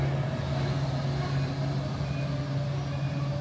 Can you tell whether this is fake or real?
real